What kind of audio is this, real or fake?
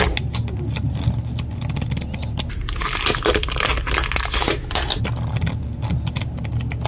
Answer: real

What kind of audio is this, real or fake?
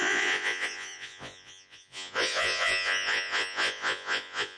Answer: fake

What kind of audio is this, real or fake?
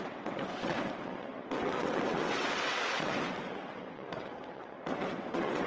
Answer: fake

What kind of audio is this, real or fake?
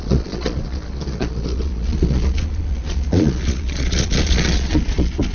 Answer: fake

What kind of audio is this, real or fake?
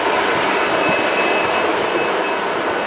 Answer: real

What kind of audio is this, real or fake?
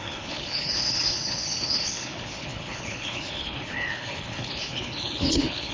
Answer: fake